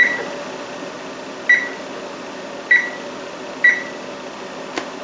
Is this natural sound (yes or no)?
yes